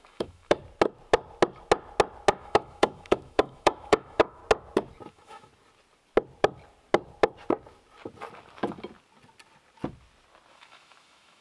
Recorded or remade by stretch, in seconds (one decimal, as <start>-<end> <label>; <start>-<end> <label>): 0.0-0.6 remade; 0.6-2.4 recorded; 2.4-4.4 remade; 4.4-5.1 recorded; 5.1-5.5 remade; 5.5-10.5 recorded; 10.5-11.4 remade